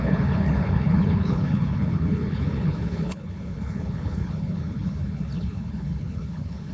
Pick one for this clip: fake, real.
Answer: fake